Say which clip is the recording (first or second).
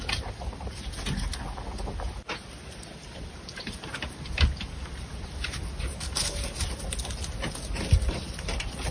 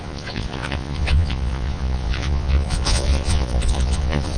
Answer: first